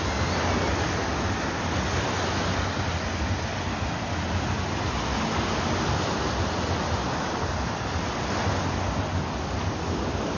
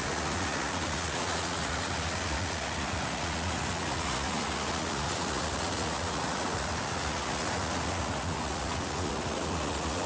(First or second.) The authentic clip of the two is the first